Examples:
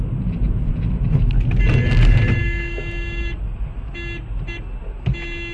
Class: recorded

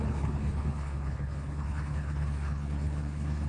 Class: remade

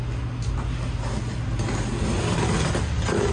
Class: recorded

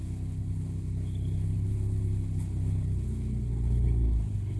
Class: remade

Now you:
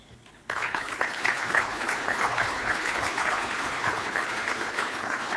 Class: remade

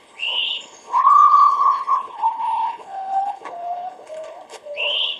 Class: remade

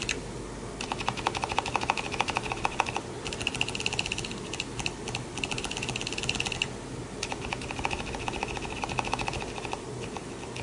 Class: recorded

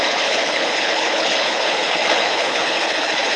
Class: remade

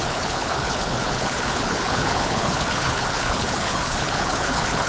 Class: remade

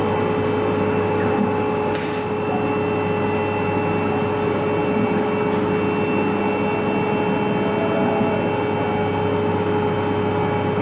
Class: recorded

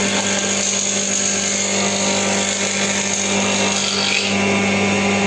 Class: recorded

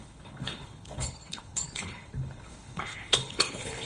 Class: remade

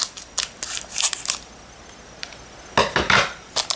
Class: recorded